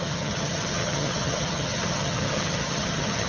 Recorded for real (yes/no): no